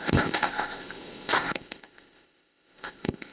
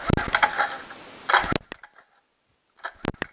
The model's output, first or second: first